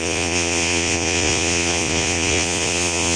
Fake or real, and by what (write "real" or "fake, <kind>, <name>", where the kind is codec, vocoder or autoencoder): fake, vocoder, Vocos